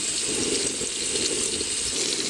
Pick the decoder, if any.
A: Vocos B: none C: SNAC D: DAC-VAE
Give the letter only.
B